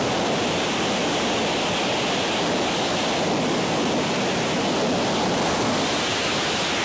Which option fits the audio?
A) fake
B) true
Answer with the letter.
B